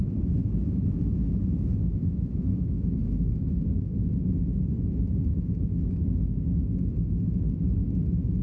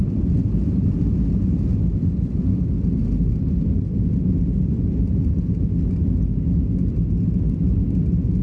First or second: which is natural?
second